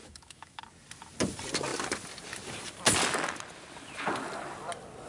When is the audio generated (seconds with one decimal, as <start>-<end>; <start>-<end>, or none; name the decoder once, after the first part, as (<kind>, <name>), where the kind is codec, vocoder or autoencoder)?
0.0-0.6 (autoencoder, DAC-VAE)